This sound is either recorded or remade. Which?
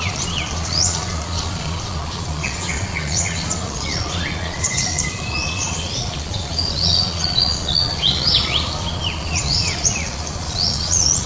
remade